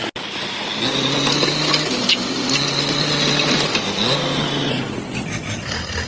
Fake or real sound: real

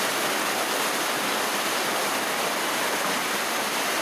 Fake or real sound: real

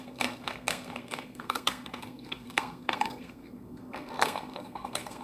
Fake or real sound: fake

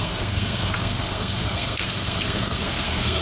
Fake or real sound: fake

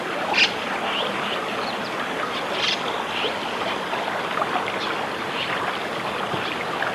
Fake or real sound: real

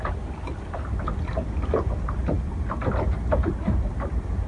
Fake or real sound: real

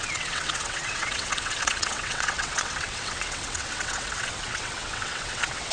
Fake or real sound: fake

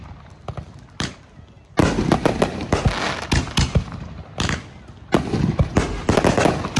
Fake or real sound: real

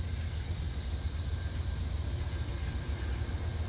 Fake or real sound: real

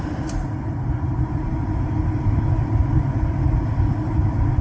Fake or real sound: real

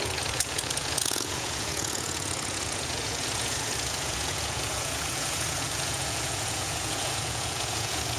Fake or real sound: fake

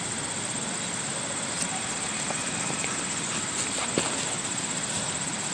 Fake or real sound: real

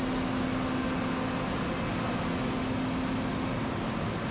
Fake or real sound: real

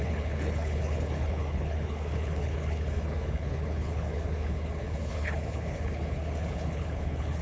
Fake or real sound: fake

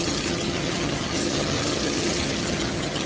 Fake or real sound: fake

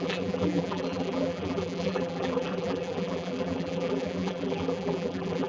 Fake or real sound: fake